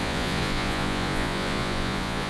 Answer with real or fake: fake